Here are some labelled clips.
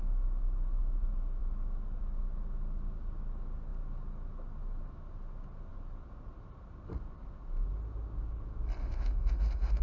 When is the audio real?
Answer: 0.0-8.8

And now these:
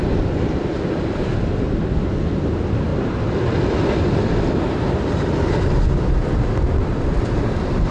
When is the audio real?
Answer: 0.0-7.9

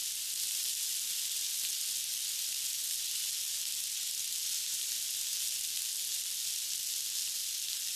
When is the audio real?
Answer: 0.0-8.0

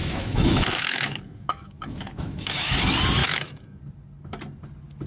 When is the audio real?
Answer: 2.8-3.2; 3.8-5.1

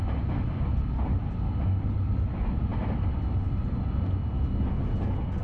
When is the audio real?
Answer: 0.0-5.4